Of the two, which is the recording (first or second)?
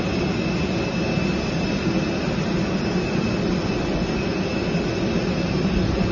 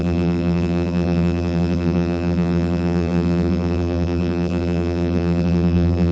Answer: first